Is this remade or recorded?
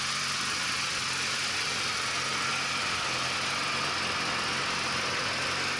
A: recorded